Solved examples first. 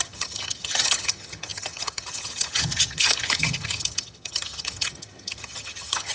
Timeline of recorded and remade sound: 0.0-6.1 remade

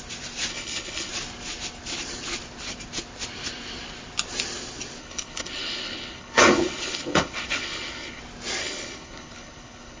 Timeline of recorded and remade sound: 0.0-0.5 recorded; 0.5-1.1 remade; 1.1-5.0 recorded; 5.0-8.2 remade; 8.2-8.6 recorded; 8.6-10.0 remade

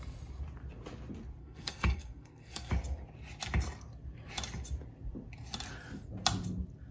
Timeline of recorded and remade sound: 0.0-1.4 recorded; 1.4-2.7 remade; 2.7-6.9 recorded